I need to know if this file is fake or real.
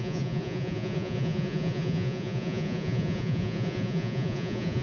fake